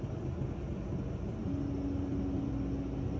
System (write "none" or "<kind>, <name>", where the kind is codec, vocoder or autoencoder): none